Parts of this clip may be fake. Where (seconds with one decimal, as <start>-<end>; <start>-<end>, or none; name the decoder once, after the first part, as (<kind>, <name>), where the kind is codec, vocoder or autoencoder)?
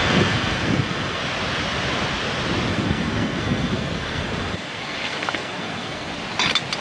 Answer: 0.0-1.2 (codec, SNAC); 2.7-6.1